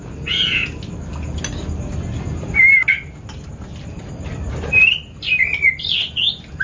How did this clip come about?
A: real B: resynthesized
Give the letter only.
A